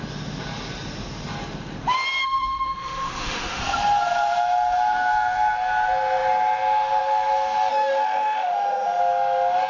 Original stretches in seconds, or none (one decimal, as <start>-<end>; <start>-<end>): 0.0-2.2; 3.6-7.7; 9.0-9.7